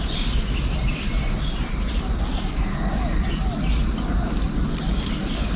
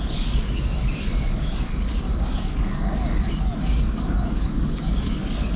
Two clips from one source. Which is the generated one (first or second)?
second